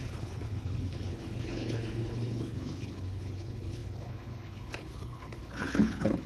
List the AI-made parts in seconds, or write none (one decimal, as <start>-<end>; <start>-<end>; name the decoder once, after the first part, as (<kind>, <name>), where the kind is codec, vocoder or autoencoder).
0.0-6.3 (codec, HILCodec)